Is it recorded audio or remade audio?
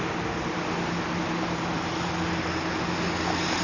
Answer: recorded